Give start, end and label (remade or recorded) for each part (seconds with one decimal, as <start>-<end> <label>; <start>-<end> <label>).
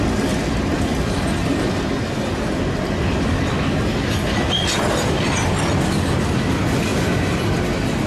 0.0-8.1 recorded